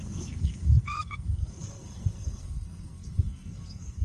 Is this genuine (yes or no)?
no